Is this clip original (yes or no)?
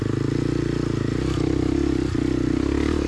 yes